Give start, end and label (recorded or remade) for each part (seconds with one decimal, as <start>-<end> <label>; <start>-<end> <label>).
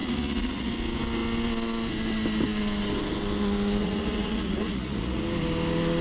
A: 0.0-0.7 remade; 0.7-3.8 recorded; 3.8-5.2 remade; 5.2-6.0 recorded